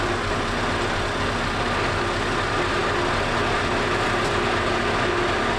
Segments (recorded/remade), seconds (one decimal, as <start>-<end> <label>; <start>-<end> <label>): 0.0-5.6 recorded